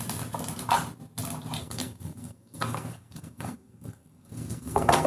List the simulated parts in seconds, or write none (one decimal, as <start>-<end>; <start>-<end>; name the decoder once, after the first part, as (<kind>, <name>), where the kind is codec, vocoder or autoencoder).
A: 1.6-5.1 (codec, SNAC)